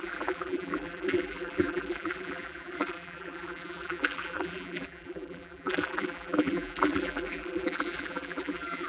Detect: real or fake fake